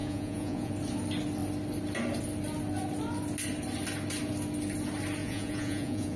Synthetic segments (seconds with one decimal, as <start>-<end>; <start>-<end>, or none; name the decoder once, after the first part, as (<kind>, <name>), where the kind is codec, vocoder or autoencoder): 0.0-0.7 (vocoder, Vocos); 5.2-6.2